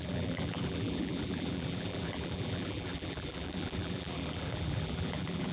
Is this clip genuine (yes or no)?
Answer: no